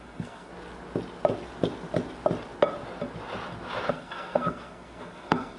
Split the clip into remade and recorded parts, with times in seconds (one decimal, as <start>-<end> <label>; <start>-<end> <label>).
0.0-0.5 remade; 0.5-3.9 recorded; 3.9-5.6 remade